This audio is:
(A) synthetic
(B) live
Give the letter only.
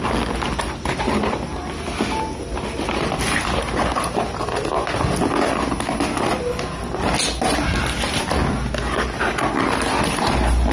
B